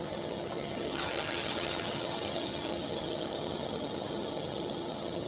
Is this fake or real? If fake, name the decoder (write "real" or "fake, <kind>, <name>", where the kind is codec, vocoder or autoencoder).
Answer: fake, vocoder, HiFi-GAN